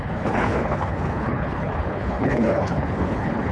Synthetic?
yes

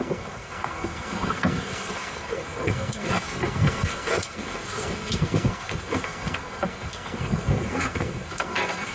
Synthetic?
yes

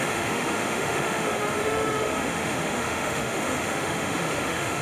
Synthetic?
yes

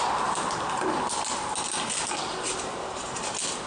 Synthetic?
no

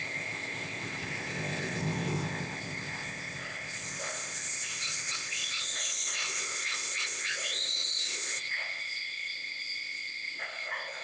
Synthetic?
yes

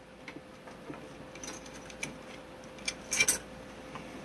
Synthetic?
no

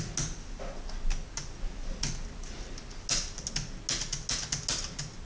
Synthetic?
no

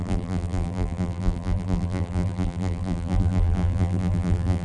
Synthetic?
yes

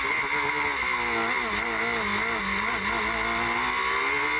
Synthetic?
no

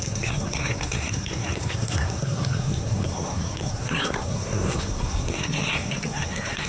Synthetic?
yes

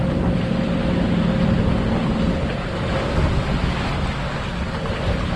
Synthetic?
no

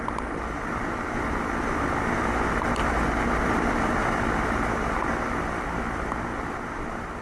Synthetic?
no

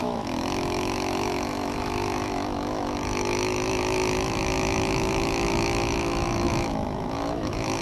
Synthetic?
yes